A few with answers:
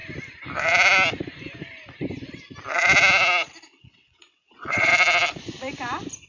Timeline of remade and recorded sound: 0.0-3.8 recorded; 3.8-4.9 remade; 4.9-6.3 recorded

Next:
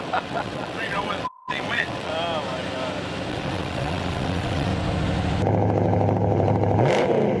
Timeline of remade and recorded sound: 0.0-2.1 remade; 2.1-3.3 recorded; 3.3-4.7 remade; 4.7-7.4 recorded

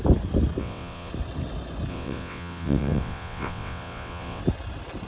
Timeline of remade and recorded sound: 0.0-0.6 recorded; 0.6-1.1 remade; 1.1-1.9 recorded; 1.9-4.4 remade; 4.4-5.1 recorded